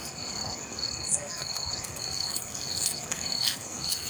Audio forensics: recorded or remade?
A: remade